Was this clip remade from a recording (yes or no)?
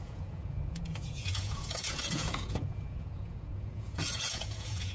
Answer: yes